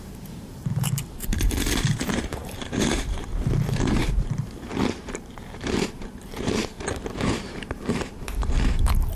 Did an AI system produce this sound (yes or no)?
yes